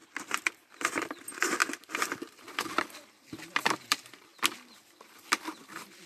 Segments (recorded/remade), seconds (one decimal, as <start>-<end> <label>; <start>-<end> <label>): 0.0-0.5 recorded; 0.5-6.1 remade